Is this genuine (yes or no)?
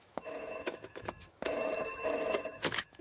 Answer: no